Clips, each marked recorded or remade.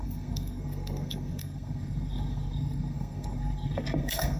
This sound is remade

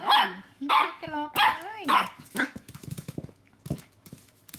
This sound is remade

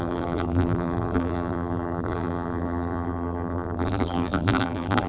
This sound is remade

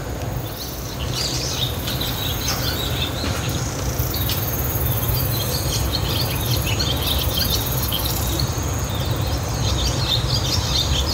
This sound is recorded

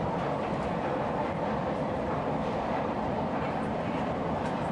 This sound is remade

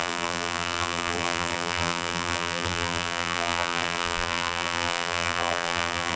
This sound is remade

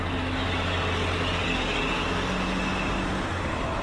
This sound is recorded